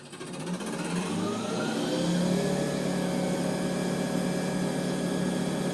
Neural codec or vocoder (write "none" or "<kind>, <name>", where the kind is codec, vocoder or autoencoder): none